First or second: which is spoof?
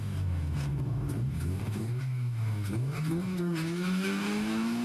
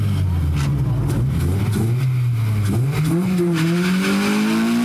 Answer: first